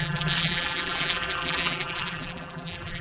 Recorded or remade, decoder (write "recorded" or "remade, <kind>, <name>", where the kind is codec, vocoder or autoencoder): remade, vocoder, BigVGAN v2